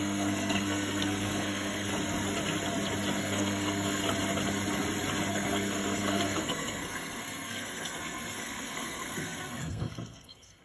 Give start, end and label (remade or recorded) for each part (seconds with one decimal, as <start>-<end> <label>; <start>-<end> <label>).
0.0-1.9 remade; 1.9-3.2 recorded; 3.2-4.0 remade; 4.0-5.3 recorded; 5.3-10.6 remade